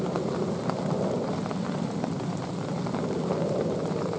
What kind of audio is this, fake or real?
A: real